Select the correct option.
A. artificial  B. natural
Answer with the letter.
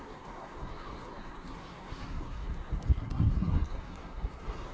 A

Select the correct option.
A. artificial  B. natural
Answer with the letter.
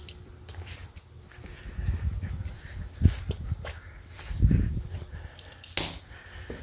B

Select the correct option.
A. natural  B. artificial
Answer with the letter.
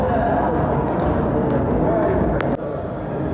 A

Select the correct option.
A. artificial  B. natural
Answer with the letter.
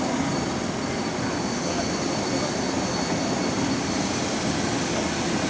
B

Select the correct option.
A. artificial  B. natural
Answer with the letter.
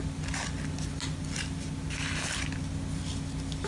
B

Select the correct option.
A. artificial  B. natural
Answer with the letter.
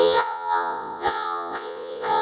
A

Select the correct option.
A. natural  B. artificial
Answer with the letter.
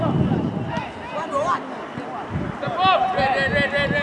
A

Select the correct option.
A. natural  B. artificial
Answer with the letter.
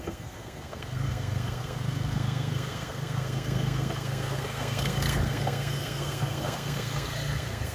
B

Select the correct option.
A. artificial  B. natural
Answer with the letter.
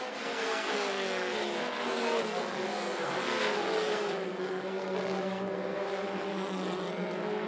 A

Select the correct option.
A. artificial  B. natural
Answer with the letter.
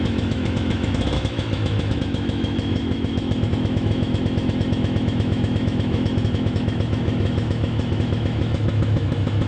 A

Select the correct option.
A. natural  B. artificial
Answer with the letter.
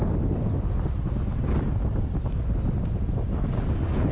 A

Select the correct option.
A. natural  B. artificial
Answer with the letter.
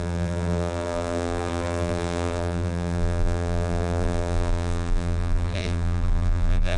B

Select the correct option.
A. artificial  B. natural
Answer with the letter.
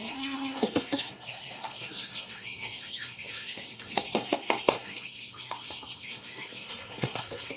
A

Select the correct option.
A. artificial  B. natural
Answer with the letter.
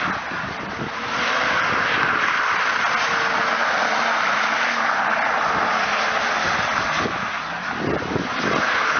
B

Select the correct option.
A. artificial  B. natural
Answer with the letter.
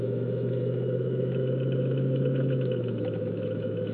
A